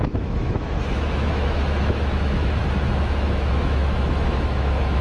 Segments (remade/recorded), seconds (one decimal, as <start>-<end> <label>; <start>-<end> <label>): 0.0-5.0 remade

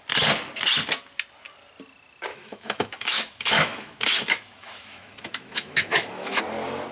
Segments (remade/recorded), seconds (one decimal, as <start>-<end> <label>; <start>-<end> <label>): 0.0-2.3 recorded; 2.3-6.4 remade; 6.4-6.9 recorded

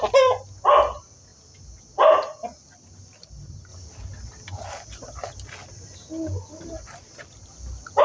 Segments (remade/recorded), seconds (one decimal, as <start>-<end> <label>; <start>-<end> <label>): 0.0-8.0 recorded

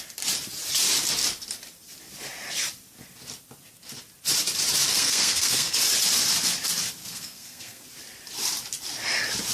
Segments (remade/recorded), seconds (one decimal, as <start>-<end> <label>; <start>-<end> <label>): 0.0-4.9 recorded; 4.9-5.8 remade; 5.8-7.0 recorded; 7.0-7.8 remade; 7.8-9.5 recorded

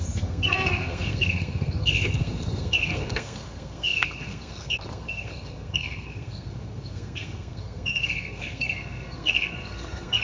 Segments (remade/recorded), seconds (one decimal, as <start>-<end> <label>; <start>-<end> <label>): 0.0-10.2 remade

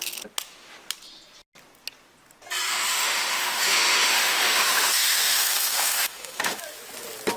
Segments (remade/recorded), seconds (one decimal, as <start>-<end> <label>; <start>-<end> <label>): 0.0-2.7 recorded; 2.7-6.6 remade; 6.6-7.4 recorded